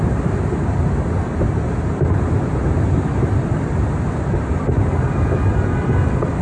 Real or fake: real